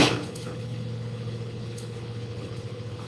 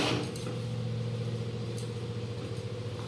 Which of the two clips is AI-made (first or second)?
first